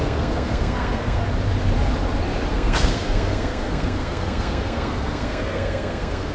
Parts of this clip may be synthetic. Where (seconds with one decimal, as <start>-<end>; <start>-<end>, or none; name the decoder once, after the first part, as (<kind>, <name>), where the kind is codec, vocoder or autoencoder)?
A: 0.0-1.2 (codec, SNAC); 2.5-6.3